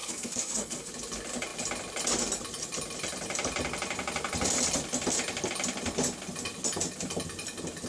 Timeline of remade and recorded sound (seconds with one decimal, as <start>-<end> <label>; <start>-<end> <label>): 0.0-0.9 remade; 0.9-7.9 recorded